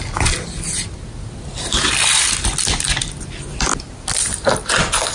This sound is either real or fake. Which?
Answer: real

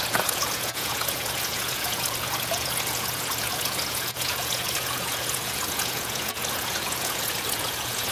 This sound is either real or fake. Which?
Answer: fake